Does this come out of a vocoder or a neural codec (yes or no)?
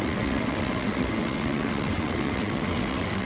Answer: yes